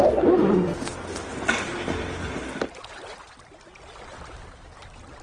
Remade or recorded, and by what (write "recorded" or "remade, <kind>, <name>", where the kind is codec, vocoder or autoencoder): recorded